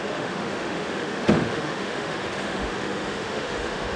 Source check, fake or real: fake